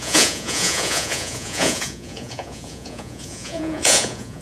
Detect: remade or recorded remade